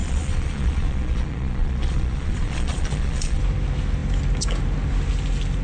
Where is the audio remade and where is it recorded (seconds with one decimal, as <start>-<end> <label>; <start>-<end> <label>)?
0.0-3.4 remade; 3.4-5.6 recorded